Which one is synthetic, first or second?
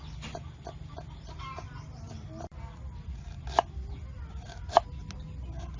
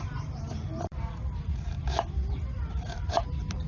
second